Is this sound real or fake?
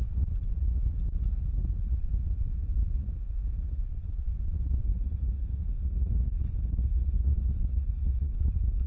fake